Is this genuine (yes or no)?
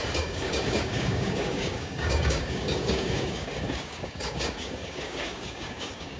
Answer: no